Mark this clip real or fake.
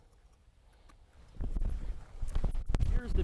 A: fake